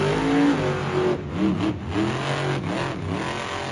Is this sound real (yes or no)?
yes